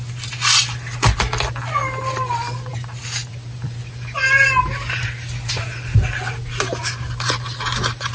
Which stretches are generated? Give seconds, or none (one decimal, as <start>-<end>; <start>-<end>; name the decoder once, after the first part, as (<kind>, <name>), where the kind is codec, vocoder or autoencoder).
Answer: none